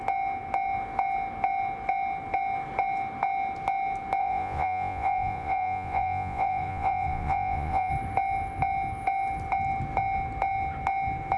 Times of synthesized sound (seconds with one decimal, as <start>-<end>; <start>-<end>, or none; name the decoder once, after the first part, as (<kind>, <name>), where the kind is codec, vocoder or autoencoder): 4.2-7.9 (vocoder, Vocos)